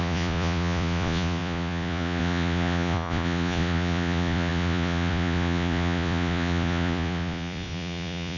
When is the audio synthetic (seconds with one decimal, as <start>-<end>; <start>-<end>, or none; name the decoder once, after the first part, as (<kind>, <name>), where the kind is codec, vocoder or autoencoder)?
0.0-8.4 (vocoder, Vocos)